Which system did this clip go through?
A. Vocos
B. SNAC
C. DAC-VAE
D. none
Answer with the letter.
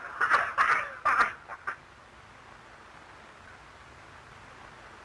D